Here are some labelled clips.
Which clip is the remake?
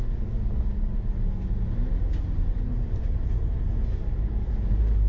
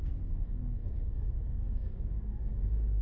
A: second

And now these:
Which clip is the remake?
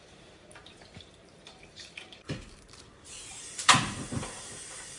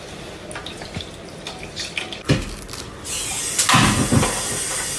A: first